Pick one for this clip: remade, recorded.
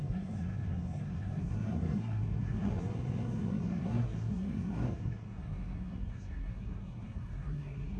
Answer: remade